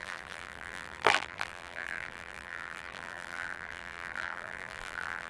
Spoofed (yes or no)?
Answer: yes